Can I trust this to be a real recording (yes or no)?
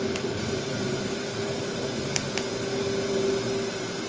yes